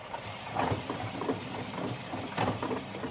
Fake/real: real